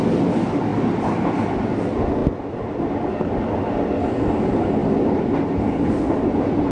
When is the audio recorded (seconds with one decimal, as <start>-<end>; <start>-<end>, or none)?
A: 0.0-6.7